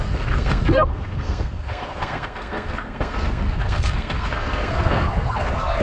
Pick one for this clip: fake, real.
fake